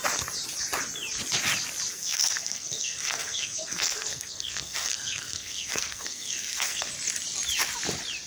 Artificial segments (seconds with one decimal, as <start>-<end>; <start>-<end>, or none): 1.9-6.9